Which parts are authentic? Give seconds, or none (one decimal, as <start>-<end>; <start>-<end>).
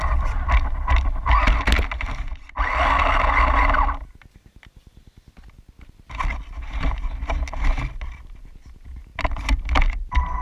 0.0-10.4